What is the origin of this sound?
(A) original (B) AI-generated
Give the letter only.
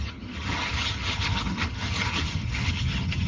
B